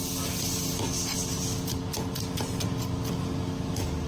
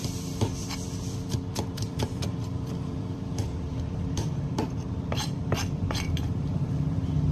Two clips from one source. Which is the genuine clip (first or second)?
first